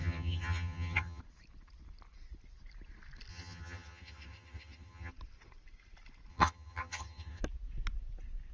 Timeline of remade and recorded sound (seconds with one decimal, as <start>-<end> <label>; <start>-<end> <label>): 0.0-1.2 remade; 1.2-3.3 recorded; 3.3-5.1 remade; 5.1-6.3 recorded; 6.3-7.4 remade; 7.4-8.5 recorded